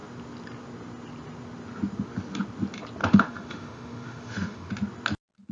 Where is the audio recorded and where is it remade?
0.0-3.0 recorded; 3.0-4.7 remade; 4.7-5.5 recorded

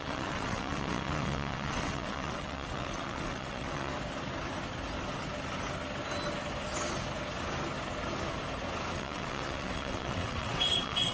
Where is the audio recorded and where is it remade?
0.0-3.9 remade; 3.9-8.9 recorded; 8.9-11.1 remade

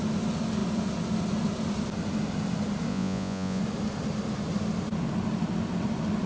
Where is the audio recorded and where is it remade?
0.0-2.9 recorded; 2.9-3.6 remade; 3.6-6.3 recorded

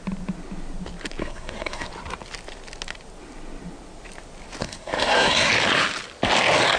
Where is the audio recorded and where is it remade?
0.0-1.2 recorded; 1.2-1.9 remade; 1.9-4.6 recorded; 4.6-5.5 remade; 5.5-6.8 recorded

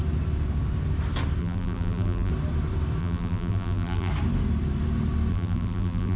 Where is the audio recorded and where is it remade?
0.0-1.4 recorded; 1.4-2.3 remade; 2.3-3.0 recorded; 3.0-4.1 remade; 4.1-5.3 recorded; 5.3-6.2 remade